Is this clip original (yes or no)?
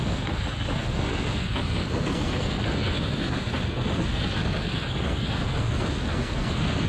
no